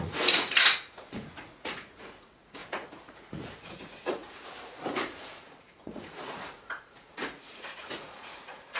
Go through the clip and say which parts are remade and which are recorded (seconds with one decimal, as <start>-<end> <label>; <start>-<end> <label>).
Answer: 0.0-8.8 remade